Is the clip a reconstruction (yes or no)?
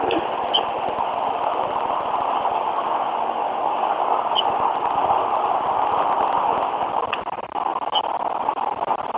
no